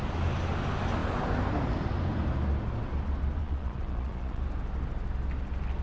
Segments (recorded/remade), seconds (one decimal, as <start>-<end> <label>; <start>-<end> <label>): 0.0-3.4 recorded; 3.4-4.4 remade; 4.4-5.8 recorded